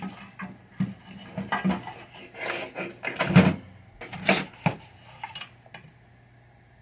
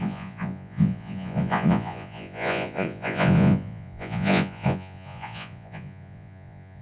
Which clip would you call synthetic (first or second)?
second